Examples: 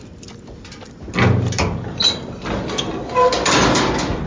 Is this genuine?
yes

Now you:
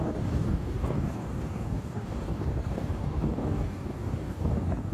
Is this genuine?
no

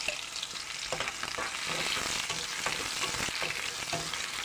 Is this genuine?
yes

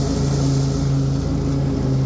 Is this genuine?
yes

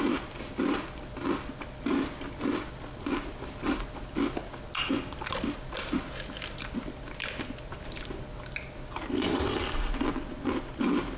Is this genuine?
yes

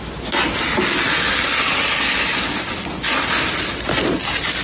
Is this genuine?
yes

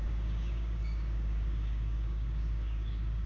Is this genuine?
no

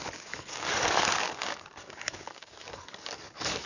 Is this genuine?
no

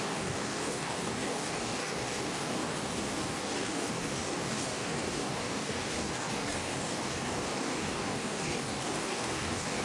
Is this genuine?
no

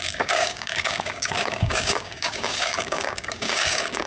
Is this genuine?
no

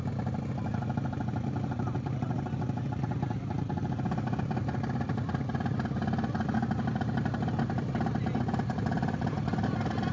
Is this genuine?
yes